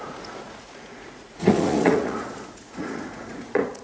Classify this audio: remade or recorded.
remade